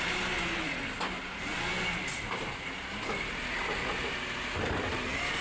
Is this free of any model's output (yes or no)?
yes